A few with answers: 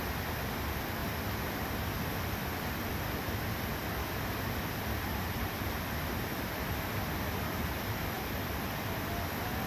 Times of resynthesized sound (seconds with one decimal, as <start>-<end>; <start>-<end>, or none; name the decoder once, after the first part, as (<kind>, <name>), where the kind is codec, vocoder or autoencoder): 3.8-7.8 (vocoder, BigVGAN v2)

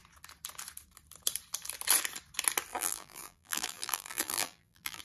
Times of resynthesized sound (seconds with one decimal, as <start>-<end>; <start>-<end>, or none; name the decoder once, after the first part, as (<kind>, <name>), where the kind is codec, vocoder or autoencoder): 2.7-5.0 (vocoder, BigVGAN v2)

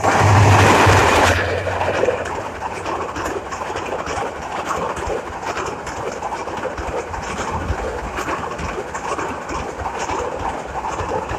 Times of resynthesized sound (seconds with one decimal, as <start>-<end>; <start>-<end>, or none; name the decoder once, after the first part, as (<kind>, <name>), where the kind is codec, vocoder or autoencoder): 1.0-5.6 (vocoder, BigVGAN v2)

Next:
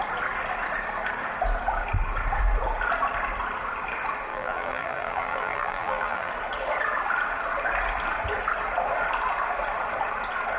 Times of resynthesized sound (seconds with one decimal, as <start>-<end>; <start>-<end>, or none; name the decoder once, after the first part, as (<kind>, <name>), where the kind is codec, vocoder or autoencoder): 4.3-6.3 (vocoder, BigVGAN v2)

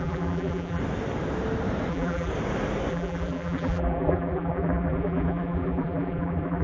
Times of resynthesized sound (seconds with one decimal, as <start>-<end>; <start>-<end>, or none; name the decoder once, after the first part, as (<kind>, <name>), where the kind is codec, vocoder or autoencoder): 0.0-0.8 (vocoder, BigVGAN v2); 1.9-2.3; 2.9-6.6

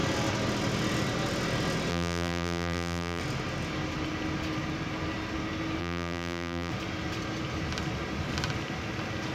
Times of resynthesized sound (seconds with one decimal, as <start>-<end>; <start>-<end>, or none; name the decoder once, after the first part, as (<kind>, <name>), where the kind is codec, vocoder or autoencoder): 1.9-3.2 (vocoder, BigVGAN v2); 5.8-6.7